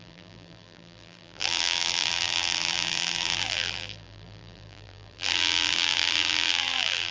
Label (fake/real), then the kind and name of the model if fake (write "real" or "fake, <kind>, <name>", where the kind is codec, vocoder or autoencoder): fake, vocoder, BigVGAN v2